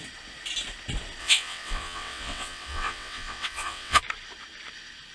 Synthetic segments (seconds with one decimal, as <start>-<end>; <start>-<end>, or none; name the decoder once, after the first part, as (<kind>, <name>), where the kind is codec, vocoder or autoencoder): 1.2-4.0 (vocoder, WaveNeXt)